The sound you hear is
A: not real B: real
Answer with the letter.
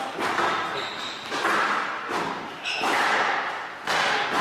B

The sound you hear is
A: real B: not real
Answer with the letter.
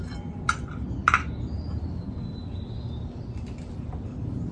B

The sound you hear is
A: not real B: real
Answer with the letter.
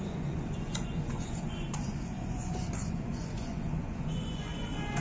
A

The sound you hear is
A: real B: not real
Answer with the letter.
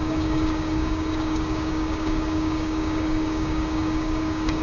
B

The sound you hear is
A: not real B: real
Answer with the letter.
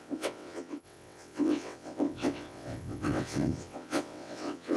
A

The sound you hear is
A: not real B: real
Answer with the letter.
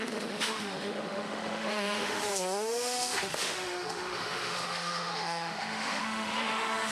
A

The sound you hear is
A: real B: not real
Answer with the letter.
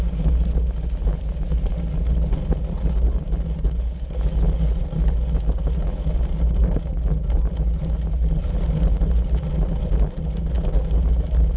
A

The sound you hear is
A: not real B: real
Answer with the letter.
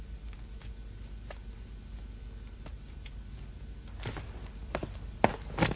B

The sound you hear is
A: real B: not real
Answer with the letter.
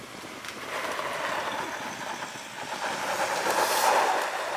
A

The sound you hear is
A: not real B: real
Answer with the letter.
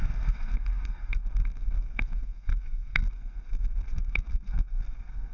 A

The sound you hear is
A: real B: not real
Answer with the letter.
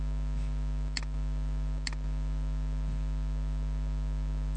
A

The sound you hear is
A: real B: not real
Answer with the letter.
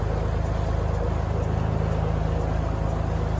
A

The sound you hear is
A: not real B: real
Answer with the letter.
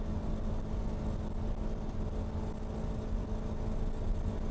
B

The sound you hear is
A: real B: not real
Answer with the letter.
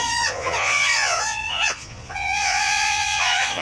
B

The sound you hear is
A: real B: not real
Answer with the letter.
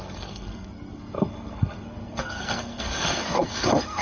B